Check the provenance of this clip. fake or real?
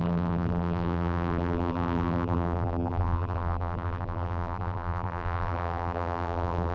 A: fake